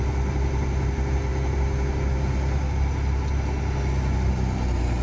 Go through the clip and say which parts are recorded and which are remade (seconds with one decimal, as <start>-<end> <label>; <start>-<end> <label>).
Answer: 0.0-5.0 recorded